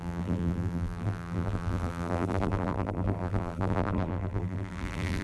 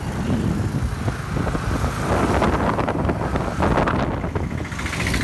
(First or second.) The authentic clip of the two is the second